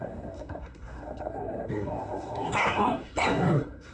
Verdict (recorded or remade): remade